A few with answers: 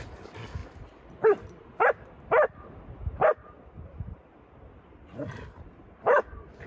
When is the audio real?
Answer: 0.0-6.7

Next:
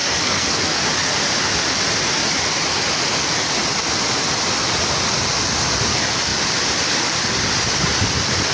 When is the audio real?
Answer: 0.8-8.5

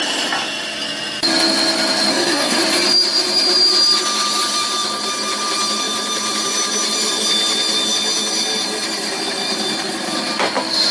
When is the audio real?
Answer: 0.0-2.1; 2.6-10.9

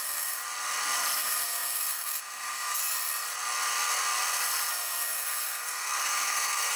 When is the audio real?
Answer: 0.4-1.2; 2.8-4.7

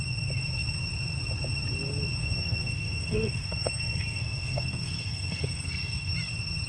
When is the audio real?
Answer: 0.0-2.2; 6.1-6.7